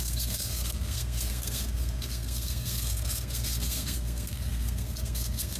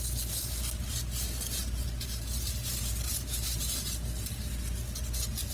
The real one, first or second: second